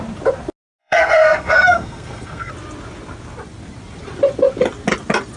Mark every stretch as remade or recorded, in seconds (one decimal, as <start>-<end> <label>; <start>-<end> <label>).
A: 0.0-0.8 recorded; 0.8-2.5 remade; 2.5-5.4 recorded